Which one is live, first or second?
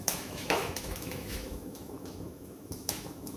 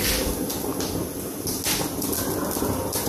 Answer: second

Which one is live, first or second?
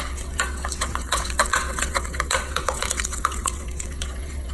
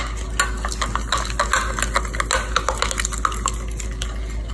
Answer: second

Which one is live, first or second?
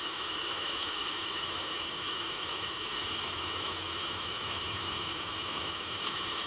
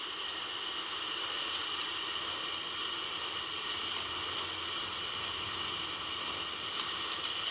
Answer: second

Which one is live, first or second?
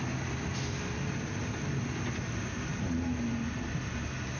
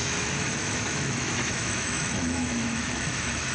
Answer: first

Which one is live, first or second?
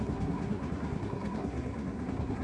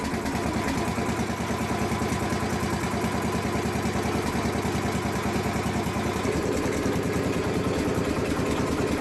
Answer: second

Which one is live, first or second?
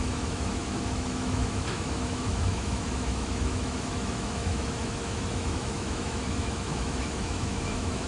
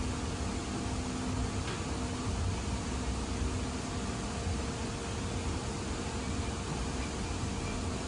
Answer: second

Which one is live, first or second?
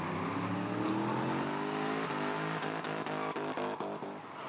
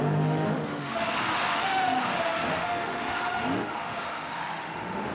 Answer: first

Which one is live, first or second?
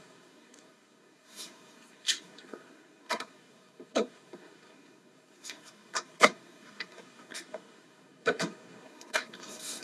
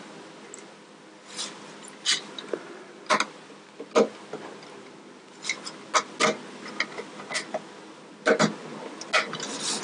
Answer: second